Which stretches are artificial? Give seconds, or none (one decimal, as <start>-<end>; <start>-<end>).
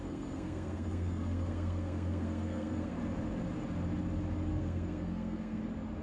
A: 0.0-3.0; 4.5-5.6